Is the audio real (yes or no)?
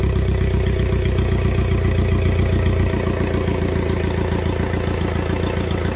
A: yes